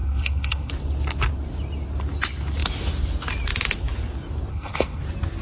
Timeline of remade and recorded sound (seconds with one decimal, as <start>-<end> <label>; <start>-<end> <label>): 0.0-0.7 remade; 0.7-4.5 recorded; 4.5-5.0 remade; 5.0-5.4 recorded